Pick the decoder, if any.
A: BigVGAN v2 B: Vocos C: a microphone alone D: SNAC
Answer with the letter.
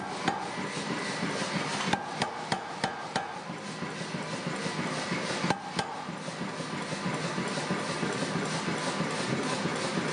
C